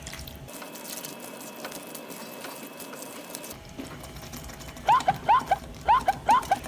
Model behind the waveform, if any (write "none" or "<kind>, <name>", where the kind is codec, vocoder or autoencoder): vocoder, BigVGAN v2